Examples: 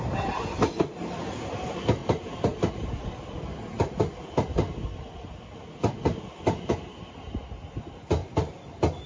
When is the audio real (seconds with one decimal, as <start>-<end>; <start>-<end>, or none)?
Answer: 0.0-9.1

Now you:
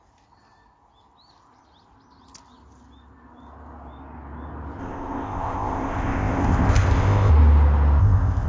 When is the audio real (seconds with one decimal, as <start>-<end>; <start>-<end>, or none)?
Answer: 0.0-4.8; 7.3-8.0

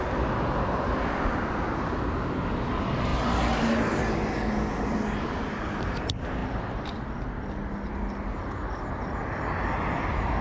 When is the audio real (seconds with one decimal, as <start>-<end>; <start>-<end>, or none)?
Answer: 0.0-10.4